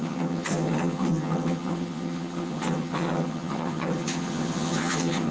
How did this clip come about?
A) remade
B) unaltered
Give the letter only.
A